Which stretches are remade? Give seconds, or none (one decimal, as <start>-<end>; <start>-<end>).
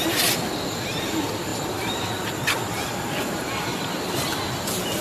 none